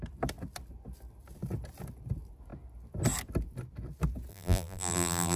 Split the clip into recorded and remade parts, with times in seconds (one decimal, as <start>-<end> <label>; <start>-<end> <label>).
0.0-4.3 recorded; 4.3-5.4 remade